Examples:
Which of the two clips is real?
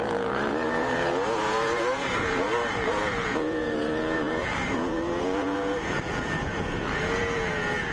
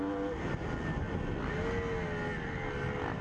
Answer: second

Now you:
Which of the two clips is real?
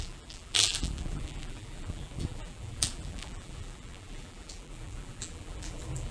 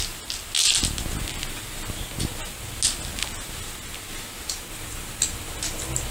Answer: second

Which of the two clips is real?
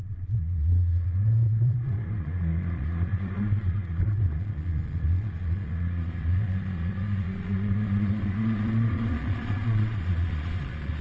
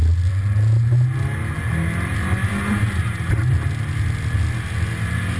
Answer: second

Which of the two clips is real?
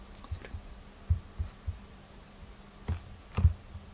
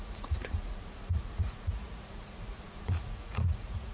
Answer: first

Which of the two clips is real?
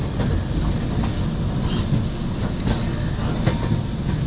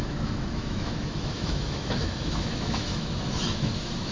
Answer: first